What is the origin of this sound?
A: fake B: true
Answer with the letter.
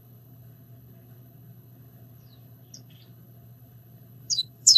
A